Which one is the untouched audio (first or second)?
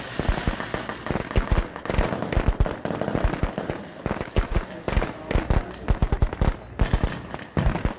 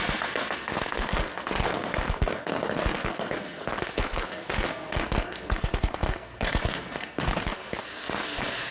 first